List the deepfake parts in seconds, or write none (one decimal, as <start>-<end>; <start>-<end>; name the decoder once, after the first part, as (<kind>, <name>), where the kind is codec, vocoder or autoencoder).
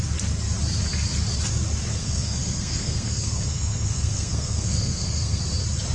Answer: 1.9-5.4 (codec, SNAC)